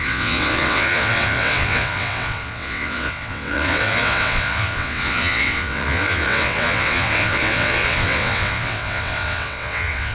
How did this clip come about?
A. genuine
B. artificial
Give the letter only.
B